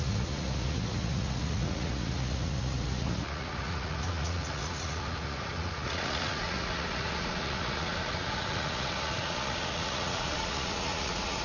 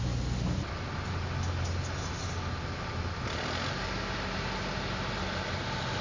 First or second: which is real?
second